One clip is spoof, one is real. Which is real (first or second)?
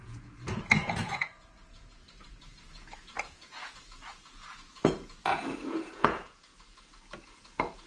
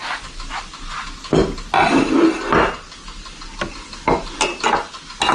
second